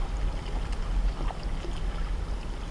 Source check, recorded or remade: recorded